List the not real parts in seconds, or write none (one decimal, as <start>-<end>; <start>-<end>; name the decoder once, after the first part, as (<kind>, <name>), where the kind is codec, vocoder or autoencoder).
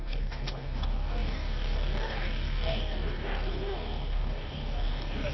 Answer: 0.0-5.3 (codec, DAC)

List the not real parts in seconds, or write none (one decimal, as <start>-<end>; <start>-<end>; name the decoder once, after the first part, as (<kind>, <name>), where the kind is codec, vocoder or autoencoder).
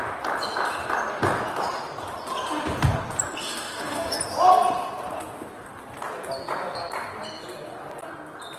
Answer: 3.4-4.2 (codec, DAC)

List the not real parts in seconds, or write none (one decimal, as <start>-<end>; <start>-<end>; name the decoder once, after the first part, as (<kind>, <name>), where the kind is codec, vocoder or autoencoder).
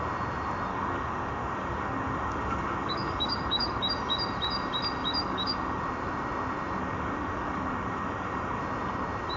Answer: 0.7-3.9 (codec, DAC); 5.2-5.8; 6.8-8.6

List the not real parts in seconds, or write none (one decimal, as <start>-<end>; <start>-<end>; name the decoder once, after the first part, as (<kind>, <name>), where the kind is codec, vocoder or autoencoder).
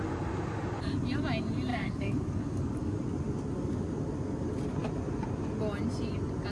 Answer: 1.7-3.0 (codec, DAC)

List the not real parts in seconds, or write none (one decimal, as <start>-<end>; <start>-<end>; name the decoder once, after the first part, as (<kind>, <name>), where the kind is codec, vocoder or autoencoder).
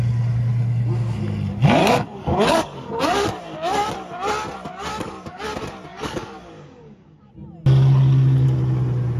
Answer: 1.8-3.0 (codec, DAC); 4.9-5.4; 5.9-7.3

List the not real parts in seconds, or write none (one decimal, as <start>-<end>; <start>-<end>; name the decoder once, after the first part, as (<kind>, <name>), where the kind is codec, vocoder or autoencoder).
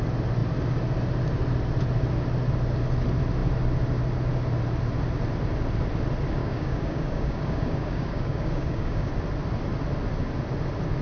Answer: 6.4-9.1 (codec, DAC)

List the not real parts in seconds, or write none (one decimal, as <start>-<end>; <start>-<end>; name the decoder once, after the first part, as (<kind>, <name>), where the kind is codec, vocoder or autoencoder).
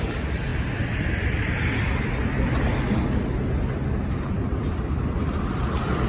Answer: none